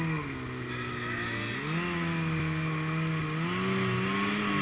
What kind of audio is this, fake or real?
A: real